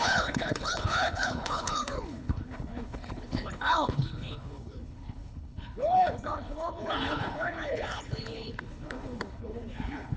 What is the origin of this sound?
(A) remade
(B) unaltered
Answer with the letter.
A